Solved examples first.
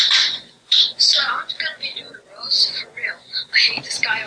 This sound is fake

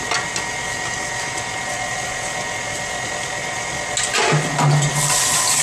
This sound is real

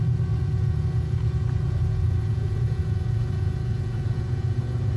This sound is fake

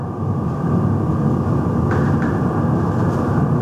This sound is real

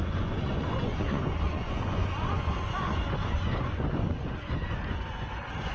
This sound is fake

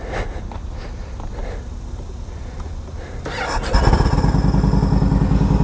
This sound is real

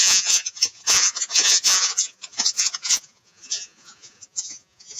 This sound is fake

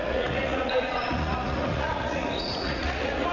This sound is fake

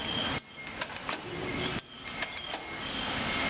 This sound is real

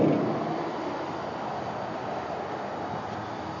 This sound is real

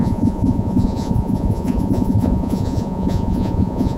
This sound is fake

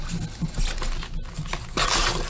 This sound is real